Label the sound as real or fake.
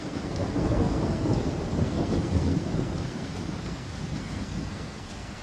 fake